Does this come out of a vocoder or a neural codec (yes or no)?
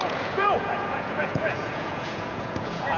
yes